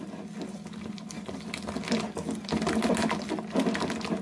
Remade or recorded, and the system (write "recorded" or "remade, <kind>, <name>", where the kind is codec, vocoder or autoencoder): recorded